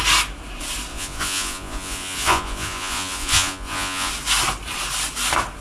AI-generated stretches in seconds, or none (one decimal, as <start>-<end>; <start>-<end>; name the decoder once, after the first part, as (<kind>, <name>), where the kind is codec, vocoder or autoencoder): 0.9-4.1 (vocoder, Vocos)

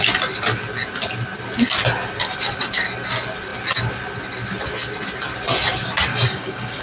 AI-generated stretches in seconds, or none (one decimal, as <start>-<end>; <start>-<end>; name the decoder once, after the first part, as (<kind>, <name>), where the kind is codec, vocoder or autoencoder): 6.1-6.8 (codec, DAC)